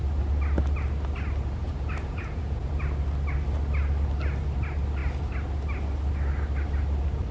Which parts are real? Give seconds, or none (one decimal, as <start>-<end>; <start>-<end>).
0.0-1.6; 2.7-7.3